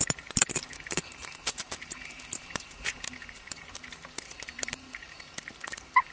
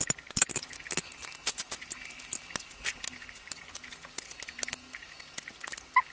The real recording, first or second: second